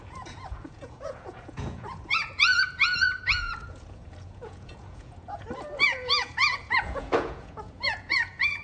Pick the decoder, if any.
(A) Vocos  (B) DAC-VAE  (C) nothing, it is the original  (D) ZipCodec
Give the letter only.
A